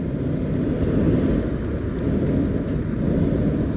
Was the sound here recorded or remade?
recorded